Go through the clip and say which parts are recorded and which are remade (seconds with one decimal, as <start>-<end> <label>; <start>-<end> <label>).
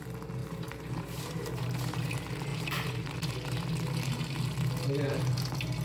0.0-0.4 recorded; 0.4-2.1 remade; 2.1-2.5 recorded; 2.5-3.3 remade; 3.3-5.8 recorded